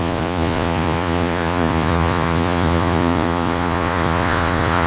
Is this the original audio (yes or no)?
no